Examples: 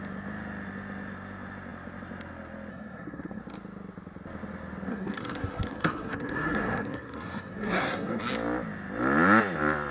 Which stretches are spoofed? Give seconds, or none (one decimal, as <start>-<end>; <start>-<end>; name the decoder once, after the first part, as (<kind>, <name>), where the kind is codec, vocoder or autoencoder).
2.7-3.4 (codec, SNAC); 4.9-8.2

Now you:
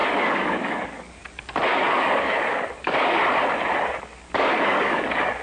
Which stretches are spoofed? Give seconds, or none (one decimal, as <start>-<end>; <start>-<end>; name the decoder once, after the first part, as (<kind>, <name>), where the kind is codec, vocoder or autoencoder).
0.0-1.2 (codec, DAC); 1.7-3.2; 3.8-5.4

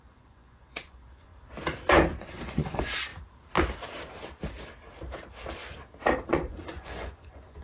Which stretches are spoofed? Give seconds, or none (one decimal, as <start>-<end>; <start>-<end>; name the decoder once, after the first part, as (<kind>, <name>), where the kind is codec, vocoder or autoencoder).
0.0-1.3 (vocoder, Vocos); 2.2-3.1; 6.3-7.6

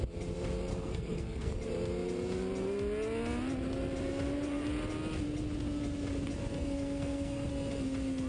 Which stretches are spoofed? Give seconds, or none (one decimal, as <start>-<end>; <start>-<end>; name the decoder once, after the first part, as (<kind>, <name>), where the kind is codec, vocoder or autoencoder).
0.7-1.6 (codec, SNAC); 6.6-7.5

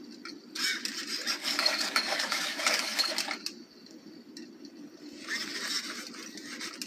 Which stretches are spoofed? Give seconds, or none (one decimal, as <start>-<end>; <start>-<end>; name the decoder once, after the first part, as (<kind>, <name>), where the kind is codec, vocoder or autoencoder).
1.4-3.1 (codec, DAC)